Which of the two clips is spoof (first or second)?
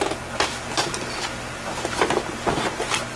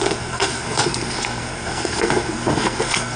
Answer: second